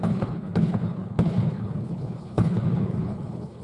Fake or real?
fake